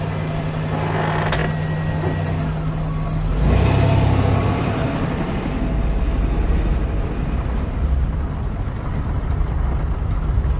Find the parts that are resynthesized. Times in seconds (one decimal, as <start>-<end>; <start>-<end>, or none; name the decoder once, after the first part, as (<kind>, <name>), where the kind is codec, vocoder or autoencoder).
none